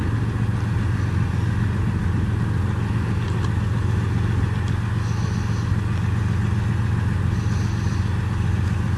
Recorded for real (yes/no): yes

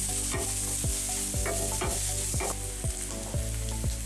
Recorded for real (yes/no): yes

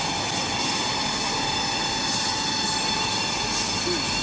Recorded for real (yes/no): yes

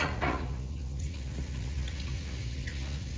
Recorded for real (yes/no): no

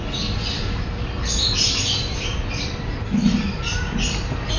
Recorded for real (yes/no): yes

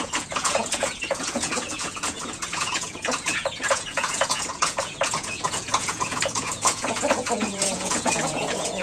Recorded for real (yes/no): no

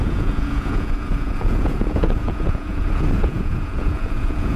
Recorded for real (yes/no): no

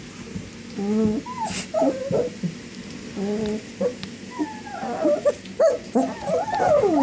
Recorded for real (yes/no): yes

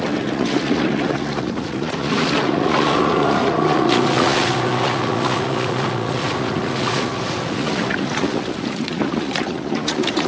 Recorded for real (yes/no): no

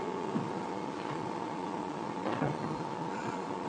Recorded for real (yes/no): no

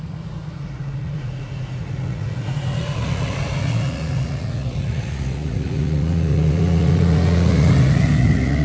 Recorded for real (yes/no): no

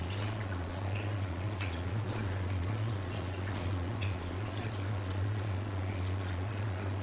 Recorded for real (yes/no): no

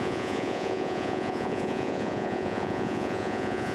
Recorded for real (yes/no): no